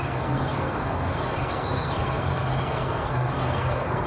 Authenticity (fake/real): fake